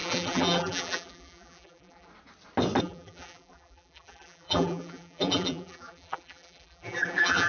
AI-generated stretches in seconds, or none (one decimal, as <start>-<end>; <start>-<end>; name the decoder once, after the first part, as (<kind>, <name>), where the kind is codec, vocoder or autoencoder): 0.0-2.1 (vocoder, BigVGAN v2); 2.8-7.5

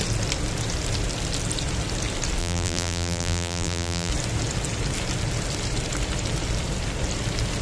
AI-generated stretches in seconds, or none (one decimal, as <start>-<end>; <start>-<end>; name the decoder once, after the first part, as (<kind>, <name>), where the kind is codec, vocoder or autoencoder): 2.4-4.1 (vocoder, BigVGAN v2)

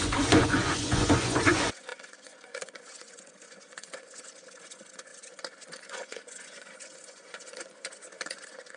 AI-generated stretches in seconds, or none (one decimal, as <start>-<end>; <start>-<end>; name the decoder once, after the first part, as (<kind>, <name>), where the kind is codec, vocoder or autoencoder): 0.0-8.8 (vocoder, Vocos)

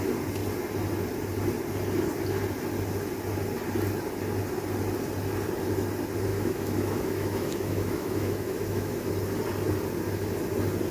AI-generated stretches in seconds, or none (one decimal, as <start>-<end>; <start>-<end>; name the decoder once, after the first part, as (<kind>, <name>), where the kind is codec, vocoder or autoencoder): 6.3-9.1 (autoencoder, DAC-VAE)

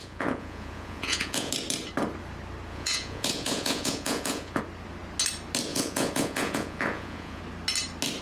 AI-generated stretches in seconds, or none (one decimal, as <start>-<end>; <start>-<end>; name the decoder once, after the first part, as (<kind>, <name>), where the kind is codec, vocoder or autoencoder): 0.0-1.5 (vocoder, Vocos); 2.7-4.6; 5.7-7.4

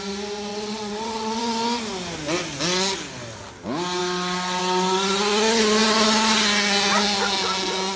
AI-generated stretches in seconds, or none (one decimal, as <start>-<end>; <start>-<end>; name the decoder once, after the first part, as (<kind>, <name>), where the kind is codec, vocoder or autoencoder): 0.5-1.4 (vocoder, WaveNeXt)

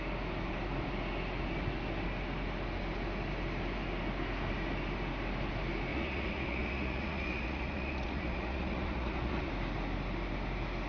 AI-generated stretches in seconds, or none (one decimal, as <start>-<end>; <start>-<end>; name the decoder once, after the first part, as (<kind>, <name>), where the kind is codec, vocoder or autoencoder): 5.9-9.5 (vocoder, Vocos)